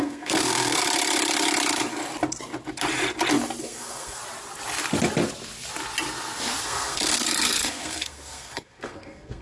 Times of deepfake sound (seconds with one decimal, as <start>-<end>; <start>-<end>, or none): 0.0-0.8; 3.6-4.2; 6.6-9.4